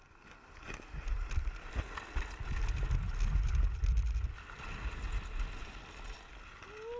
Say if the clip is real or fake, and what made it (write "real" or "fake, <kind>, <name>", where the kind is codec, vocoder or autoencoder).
real